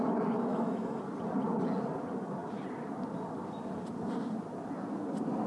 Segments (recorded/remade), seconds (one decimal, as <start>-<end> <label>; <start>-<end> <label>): 0.0-0.5 recorded; 0.5-1.0 remade; 1.0-5.5 recorded